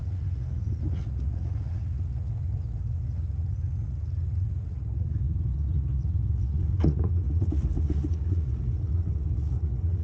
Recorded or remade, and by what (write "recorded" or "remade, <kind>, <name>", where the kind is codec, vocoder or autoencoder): remade, vocoder, Vocos